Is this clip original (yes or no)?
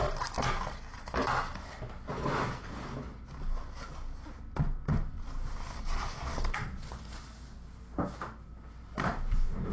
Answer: yes